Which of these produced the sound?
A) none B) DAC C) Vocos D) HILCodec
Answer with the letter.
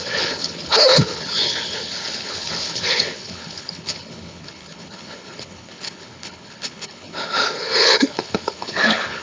D